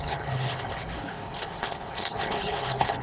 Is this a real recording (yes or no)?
no